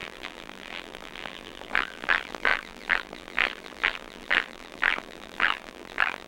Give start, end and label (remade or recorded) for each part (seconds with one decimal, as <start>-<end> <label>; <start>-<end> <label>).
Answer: 0.0-6.3 remade